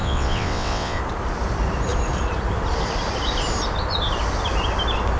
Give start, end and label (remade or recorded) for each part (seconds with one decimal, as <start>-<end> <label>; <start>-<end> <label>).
0.0-1.0 remade; 1.0-5.2 recorded